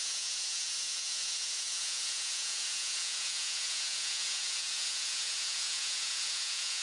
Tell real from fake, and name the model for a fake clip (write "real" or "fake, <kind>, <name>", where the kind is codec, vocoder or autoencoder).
fake, vocoder, Vocos